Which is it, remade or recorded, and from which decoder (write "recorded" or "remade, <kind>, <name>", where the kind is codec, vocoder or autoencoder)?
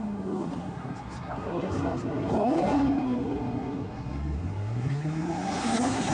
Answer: remade, codec, SNAC